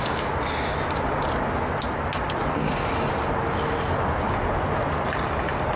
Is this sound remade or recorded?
recorded